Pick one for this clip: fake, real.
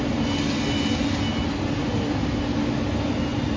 real